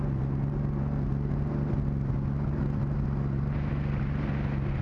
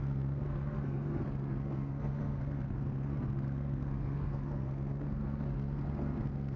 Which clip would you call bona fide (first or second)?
first